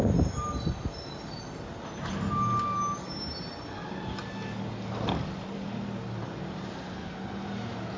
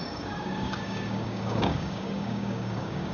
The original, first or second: first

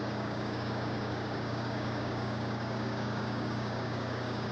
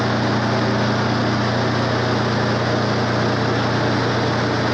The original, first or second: second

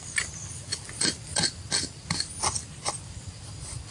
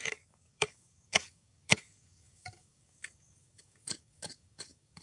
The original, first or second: first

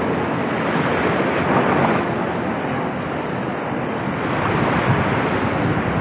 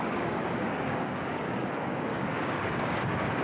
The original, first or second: first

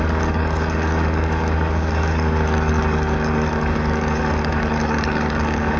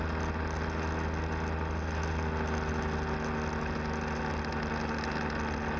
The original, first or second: second